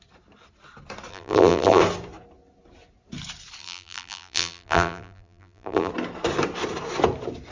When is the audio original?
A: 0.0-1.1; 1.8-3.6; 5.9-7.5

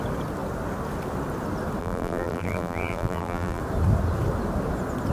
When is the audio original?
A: 0.0-1.8; 3.6-5.1

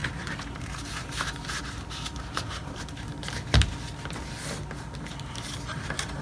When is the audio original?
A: 3.7-6.2